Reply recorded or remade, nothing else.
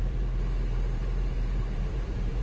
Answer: remade